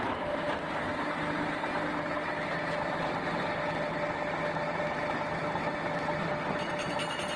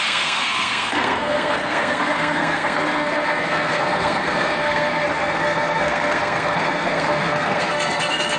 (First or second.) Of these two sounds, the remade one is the second